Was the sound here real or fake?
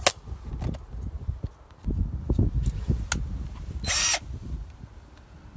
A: real